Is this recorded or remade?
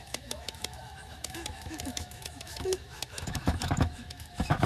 remade